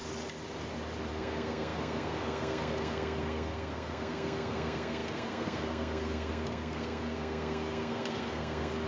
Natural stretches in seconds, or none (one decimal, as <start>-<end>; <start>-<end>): 0.0-1.1